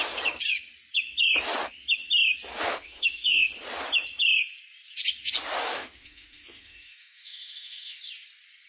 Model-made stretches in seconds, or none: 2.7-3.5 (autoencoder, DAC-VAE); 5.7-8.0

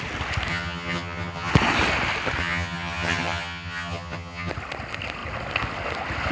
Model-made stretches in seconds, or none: 0.5-1.5 (vocoder, HiFi-GAN); 2.4-4.5